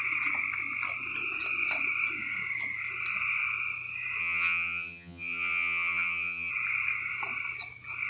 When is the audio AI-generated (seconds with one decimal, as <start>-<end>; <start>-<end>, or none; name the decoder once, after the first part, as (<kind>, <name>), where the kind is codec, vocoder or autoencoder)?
4.2-6.5 (vocoder, HiFi-GAN)